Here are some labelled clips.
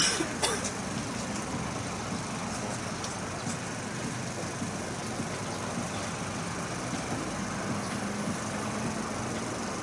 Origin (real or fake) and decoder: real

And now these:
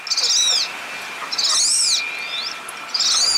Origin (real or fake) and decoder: real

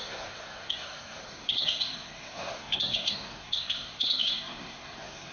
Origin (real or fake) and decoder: fake, codec, SNAC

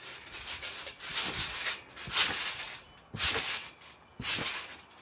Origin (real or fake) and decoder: real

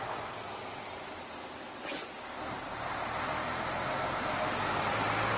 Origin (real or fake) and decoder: real